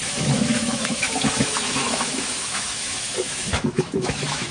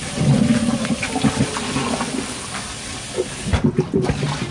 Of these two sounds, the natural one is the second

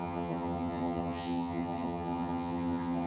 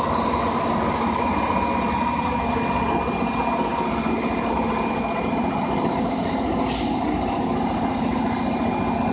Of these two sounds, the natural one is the second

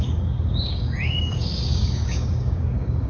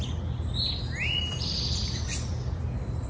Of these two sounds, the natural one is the second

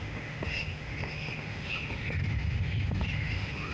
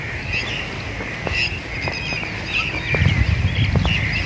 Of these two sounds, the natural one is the second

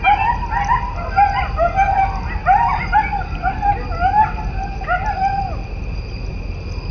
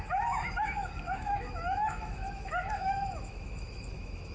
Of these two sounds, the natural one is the first